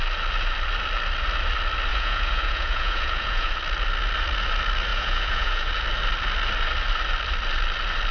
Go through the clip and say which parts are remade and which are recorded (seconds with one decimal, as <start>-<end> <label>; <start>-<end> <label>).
0.0-1.9 recorded; 1.9-3.5 remade; 3.5-4.9 recorded; 4.9-5.7 remade; 5.7-8.1 recorded